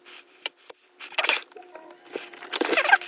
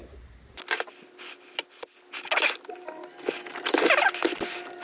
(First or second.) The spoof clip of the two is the first